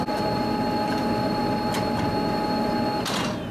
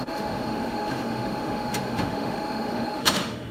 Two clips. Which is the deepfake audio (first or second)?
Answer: second